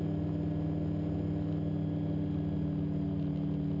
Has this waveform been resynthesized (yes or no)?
no